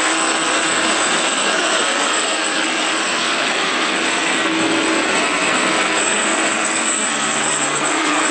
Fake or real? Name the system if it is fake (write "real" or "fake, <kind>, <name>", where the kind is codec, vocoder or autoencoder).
fake, codec, SNAC